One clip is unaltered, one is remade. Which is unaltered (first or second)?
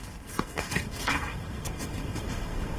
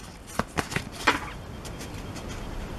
second